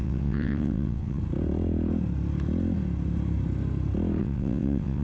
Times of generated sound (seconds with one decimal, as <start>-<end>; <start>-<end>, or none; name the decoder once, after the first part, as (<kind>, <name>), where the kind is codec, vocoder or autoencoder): 0.0-1.2 (vocoder, WaveNeXt); 4.2-5.0